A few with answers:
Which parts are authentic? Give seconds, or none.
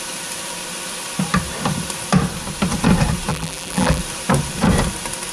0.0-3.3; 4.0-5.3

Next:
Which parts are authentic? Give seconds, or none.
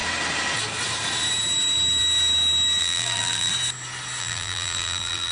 0.0-2.8; 3.5-4.2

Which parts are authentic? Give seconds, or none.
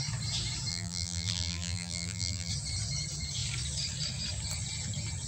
0.0-0.7; 2.5-5.3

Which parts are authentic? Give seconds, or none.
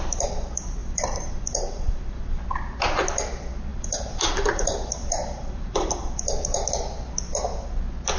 0.0-0.8; 2.4-3.7; 6.2-8.2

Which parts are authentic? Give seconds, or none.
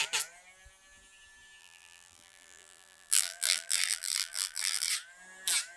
0.0-1.6; 4.9-5.8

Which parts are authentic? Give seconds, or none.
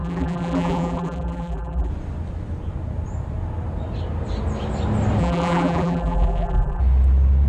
1.9-5.2; 6.8-7.5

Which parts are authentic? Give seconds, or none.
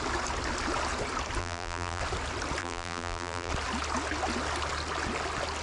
0.0-1.4; 2.0-2.6; 3.5-5.6